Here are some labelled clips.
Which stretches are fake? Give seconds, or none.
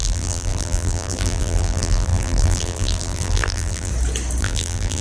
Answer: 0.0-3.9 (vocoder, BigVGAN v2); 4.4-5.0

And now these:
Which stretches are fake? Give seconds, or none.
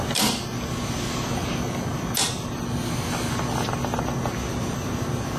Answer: none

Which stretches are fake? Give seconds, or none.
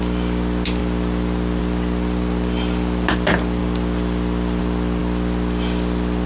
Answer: 0.8-1.6 (vocoder, BigVGAN v2); 3.6-4.6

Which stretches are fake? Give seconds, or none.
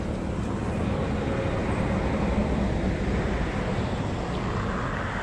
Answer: 1.6-4.7 (vocoder, BigVGAN v2)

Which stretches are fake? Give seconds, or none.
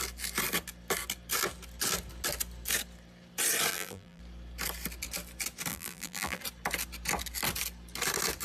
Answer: 3.7-4.2 (vocoder, BigVGAN v2); 5.7-6.4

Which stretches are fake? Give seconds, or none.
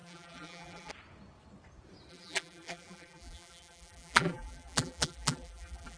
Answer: 0.0-0.9 (vocoder, BigVGAN v2); 2.1-6.0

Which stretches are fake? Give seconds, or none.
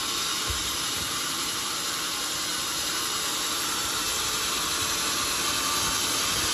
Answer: 0.6-1.7 (vocoder, BigVGAN v2); 2.5-4.2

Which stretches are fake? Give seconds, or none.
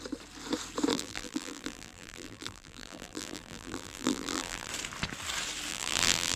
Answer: 0.9-4.7 (vocoder, BigVGAN v2); 5.7-6.4